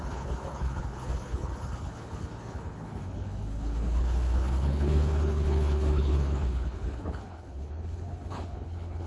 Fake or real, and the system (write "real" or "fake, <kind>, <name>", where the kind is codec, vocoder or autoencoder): fake, codec, HILCodec